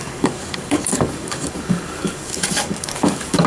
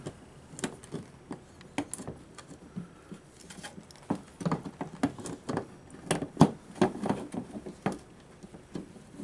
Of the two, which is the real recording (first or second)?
second